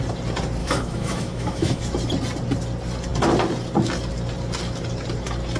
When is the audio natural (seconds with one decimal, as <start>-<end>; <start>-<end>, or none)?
0.0-0.6; 1.8-5.6